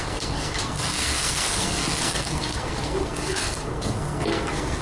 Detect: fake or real fake